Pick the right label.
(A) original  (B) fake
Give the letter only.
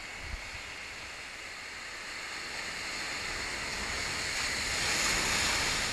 A